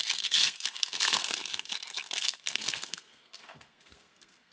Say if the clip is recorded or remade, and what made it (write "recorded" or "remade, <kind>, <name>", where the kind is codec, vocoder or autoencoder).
remade, codec, SNAC